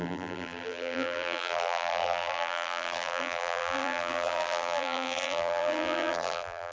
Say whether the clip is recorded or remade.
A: remade